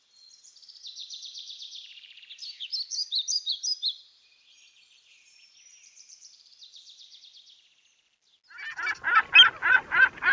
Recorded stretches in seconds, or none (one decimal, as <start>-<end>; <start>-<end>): 0.0-1.0; 2.2-3.0; 7.2-9.6